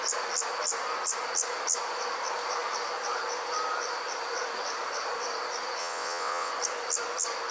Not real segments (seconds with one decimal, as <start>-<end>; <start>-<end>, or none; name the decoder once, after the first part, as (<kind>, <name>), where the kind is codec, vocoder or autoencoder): 5.8-6.5 (vocoder, WaveNeXt)